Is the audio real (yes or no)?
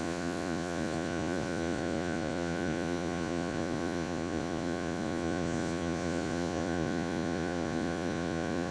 no